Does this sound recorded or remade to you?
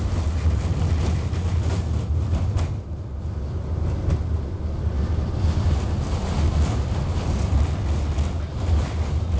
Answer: recorded